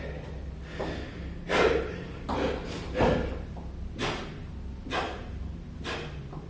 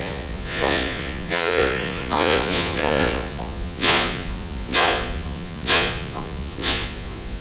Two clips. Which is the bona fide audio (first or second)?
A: first